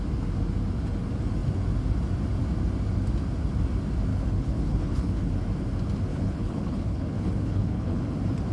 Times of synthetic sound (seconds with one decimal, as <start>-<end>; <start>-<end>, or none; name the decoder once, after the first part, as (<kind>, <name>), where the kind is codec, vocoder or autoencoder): 4.1-5.3 (codec, HILCodec); 6.1-8.0

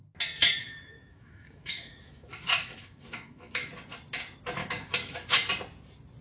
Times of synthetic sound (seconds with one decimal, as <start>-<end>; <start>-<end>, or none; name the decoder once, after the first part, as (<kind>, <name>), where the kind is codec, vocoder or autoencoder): 0.6-3.7 (autoencoder, DAC-VAE); 4.6-5.5

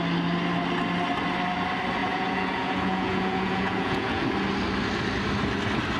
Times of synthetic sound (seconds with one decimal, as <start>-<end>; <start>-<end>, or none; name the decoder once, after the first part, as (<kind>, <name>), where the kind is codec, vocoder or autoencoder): 2.0-4.2 (vocoder, Vocos)

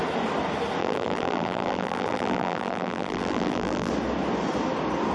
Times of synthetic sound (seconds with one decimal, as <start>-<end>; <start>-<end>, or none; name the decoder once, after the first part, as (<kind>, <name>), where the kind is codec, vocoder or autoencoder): 0.8-3.9 (vocoder, BigVGAN v2)

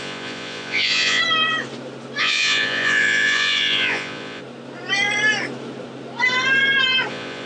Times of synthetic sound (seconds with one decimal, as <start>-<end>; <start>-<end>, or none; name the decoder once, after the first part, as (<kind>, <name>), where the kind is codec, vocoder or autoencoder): 0.0-1.2 (vocoder, Vocos); 2.2-4.4; 7.1-7.5

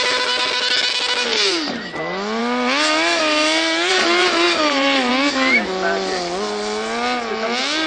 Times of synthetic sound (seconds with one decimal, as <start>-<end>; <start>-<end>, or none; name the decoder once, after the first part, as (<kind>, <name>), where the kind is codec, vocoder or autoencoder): 1.3-1.8 (vocoder, BigVGAN v2); 3.9-5.1

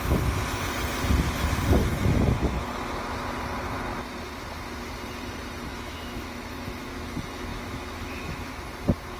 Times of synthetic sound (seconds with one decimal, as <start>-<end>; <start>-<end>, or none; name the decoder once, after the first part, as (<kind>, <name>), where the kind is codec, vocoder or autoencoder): 1.8-2.7 (autoencoder, DAC-VAE); 5.7-6.9; 7.5-8.5